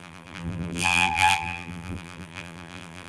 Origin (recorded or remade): remade